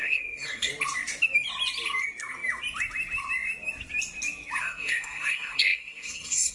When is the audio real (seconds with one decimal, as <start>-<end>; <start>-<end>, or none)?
0.7-4.6